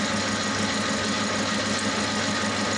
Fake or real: real